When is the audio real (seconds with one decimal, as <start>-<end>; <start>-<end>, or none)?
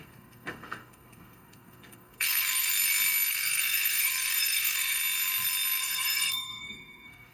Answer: 2.7-3.3; 5.0-5.8